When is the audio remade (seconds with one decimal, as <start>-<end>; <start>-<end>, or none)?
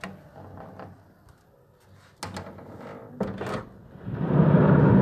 none